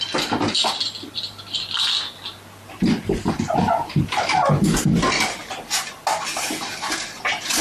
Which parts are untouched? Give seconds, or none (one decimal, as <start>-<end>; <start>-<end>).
0.0-7.6